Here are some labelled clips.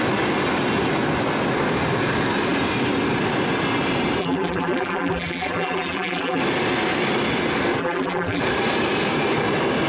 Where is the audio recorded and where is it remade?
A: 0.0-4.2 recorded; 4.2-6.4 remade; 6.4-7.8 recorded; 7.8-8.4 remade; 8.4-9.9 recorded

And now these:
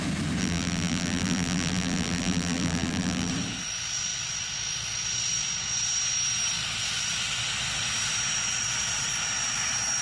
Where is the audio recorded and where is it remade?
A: 0.0-0.4 recorded; 0.4-3.3 remade; 3.3-10.0 recorded

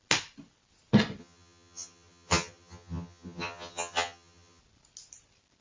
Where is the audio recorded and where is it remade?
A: 0.0-1.2 recorded; 1.2-4.6 remade; 4.6-5.6 recorded

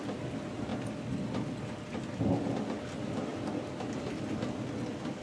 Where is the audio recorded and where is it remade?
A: 0.0-5.2 recorded